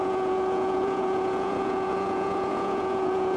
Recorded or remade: remade